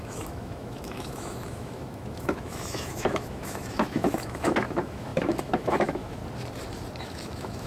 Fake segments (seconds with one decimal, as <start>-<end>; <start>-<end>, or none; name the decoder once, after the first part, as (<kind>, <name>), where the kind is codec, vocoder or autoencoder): 0.0-6.2 (autoencoder, DAC-VAE); 7.0-7.7